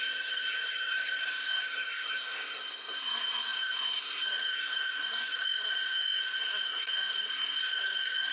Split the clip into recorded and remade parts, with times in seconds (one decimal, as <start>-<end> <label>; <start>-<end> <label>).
0.0-8.3 remade